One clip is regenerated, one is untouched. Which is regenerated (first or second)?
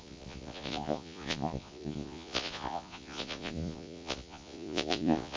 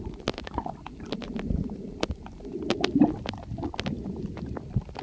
first